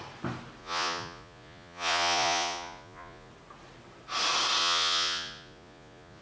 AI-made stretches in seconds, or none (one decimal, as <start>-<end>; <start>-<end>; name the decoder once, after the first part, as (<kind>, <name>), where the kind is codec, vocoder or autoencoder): 0.6-3.3 (vocoder, Vocos); 4.6-6.2